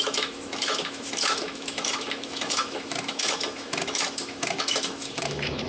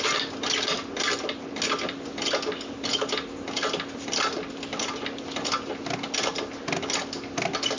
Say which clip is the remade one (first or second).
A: first